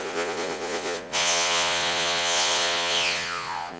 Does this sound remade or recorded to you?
remade